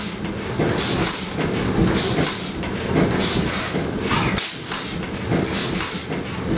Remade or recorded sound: recorded